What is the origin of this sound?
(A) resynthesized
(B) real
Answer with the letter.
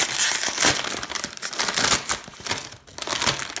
B